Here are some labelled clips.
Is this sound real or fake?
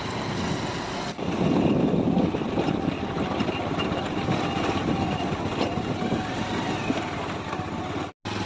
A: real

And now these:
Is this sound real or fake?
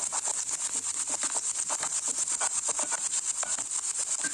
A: real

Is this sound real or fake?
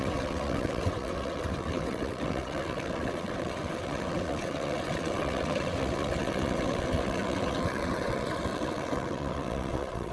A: fake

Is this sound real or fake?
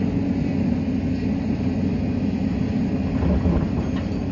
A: real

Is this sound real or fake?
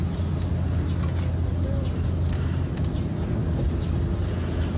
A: real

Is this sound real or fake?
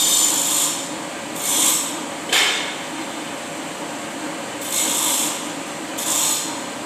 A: real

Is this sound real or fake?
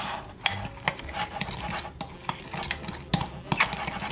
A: real